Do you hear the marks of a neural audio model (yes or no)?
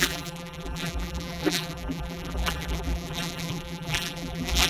yes